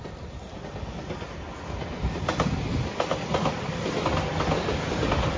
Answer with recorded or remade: recorded